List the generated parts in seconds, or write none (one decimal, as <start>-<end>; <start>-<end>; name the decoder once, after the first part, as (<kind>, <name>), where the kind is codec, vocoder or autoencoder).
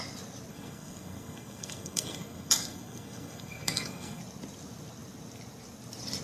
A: 0.5-4.2 (codec, SNAC)